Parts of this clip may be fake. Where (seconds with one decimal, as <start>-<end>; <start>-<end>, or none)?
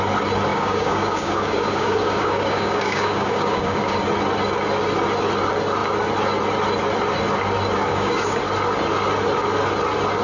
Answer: 0.5-3.9; 7.9-8.4